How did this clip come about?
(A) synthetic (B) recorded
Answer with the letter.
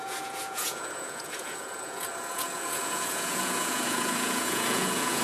A